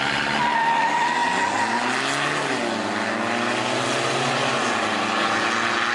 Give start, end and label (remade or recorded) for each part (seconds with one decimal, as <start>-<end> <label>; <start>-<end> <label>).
0.0-5.9 recorded